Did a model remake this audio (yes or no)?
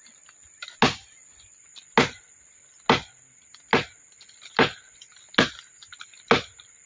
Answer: no